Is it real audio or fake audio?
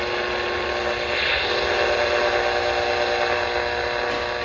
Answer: real